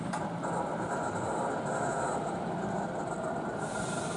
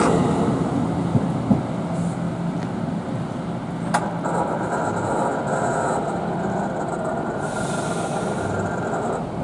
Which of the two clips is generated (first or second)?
first